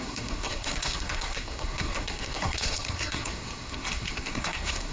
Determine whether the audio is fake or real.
fake